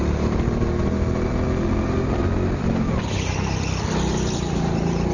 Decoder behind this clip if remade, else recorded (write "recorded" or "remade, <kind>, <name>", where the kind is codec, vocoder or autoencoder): recorded